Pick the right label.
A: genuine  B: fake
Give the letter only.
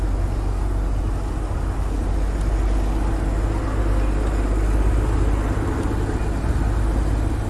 A